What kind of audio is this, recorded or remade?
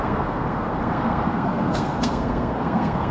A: remade